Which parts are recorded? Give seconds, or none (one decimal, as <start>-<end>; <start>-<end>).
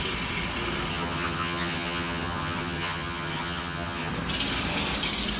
0.0-0.9; 4.1-5.4